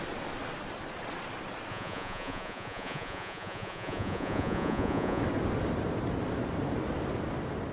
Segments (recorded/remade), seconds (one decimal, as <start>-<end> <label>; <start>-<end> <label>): 0.0-1.7 recorded; 1.7-5.2 remade; 5.2-7.7 recorded